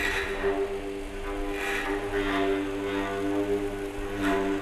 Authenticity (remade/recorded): recorded